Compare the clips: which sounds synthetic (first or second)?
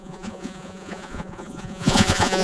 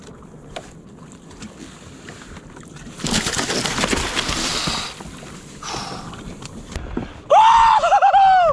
first